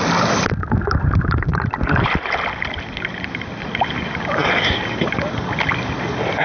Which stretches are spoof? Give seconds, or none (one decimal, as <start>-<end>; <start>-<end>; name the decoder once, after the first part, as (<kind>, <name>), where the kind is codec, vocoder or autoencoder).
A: none